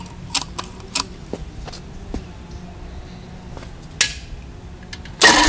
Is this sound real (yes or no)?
yes